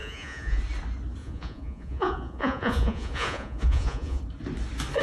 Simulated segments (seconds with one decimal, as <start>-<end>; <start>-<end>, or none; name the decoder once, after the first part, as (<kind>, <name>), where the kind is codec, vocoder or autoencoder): 0.0-0.6 (vocoder, Vocos); 1.2-4.2